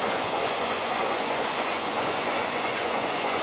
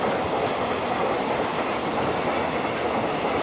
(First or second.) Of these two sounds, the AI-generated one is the first